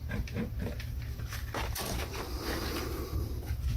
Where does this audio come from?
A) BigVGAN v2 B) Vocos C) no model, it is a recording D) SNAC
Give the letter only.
A